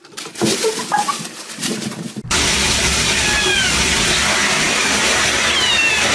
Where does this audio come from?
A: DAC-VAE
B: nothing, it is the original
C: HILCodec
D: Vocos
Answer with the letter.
B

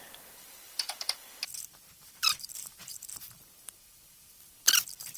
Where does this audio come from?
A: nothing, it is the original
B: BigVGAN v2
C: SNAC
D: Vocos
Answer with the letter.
B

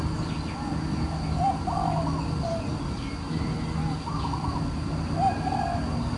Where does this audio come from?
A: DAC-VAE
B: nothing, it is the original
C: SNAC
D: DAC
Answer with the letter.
B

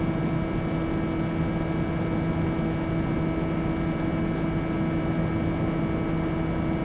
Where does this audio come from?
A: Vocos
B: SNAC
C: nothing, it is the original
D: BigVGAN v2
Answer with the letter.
C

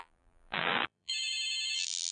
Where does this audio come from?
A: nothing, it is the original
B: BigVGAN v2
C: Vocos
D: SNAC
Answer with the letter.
B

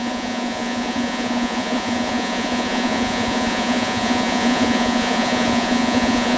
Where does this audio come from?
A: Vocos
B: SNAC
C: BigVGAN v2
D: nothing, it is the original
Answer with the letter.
A